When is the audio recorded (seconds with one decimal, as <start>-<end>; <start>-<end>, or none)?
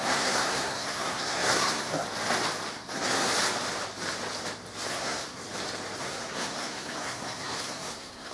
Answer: 1.9-2.7; 3.3-4.9; 5.4-6.0